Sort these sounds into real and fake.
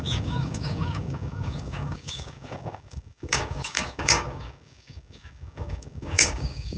fake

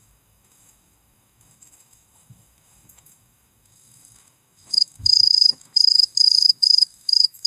fake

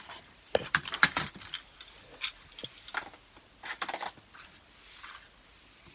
real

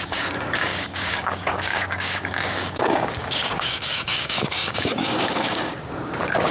fake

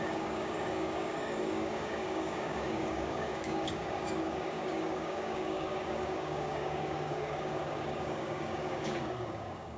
fake